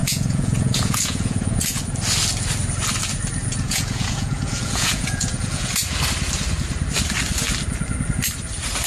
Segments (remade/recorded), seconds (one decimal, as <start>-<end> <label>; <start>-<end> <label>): 0.0-1.8 remade; 1.8-3.4 recorded; 3.4-5.8 remade; 5.8-8.9 recorded